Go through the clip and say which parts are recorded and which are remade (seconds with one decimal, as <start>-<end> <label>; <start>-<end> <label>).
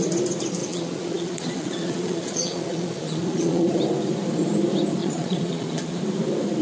0.0-0.6 recorded; 0.6-3.8 remade; 3.8-5.0 recorded; 5.0-6.0 remade; 6.0-6.6 recorded